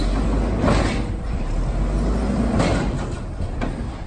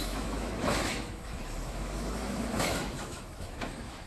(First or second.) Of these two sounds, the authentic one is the first